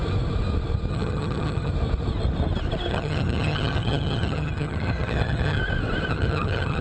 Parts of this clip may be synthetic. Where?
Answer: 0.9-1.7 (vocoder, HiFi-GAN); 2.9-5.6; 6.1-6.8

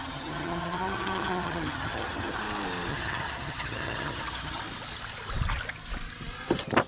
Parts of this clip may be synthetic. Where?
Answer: 0.0-2.4 (vocoder, HiFi-GAN); 2.9-4.6

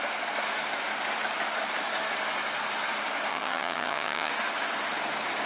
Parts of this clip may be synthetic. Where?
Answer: 3.3-4.3 (vocoder, HiFi-GAN)

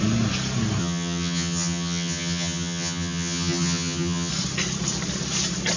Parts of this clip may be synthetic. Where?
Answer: 0.8-4.3 (vocoder, HiFi-GAN)